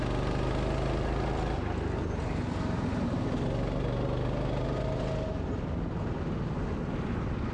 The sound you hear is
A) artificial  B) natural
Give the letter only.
B